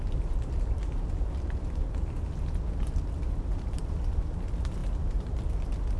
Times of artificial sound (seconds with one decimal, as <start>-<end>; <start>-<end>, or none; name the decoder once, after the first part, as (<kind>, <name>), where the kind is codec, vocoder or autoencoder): 4.8-5.5 (vocoder, BigVGAN v2)